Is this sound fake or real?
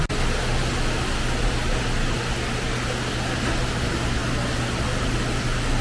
real